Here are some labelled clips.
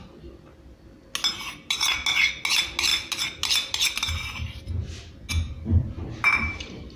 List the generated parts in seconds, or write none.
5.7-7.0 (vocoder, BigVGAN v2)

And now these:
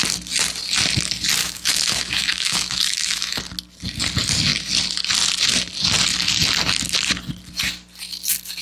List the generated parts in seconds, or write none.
1.4-3.4 (autoencoder, DAC-VAE)

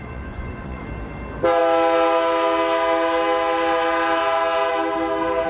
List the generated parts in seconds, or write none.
0.0-0.8 (vocoder, Vocos)